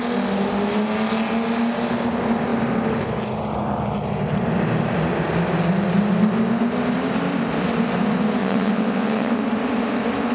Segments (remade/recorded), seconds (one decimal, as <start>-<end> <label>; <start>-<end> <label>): 0.0-8.4 recorded; 8.4-9.4 remade; 9.4-10.3 recorded